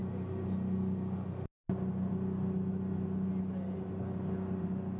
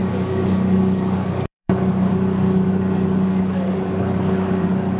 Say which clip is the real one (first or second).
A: first